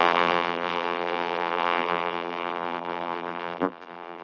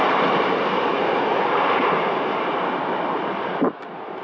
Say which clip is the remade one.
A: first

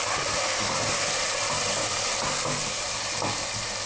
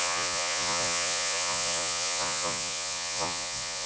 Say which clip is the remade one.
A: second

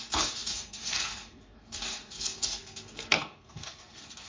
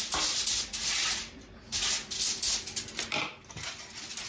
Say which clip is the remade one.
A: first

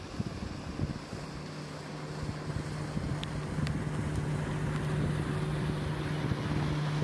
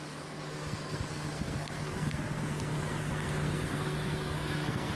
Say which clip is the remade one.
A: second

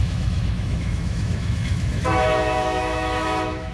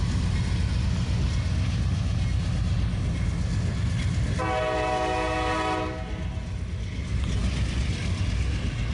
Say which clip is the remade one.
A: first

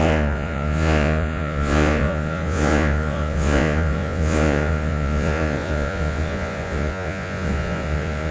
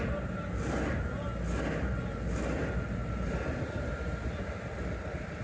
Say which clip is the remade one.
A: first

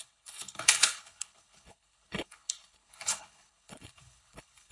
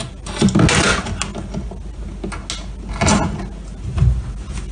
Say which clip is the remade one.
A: first